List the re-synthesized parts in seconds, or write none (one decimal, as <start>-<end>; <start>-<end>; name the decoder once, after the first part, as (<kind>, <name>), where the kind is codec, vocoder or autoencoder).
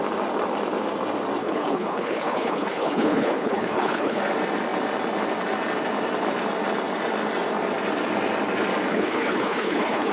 1.4-4.2 (codec, HILCodec); 8.9-10.1